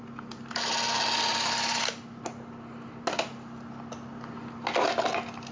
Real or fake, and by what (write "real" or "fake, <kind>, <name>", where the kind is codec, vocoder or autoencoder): real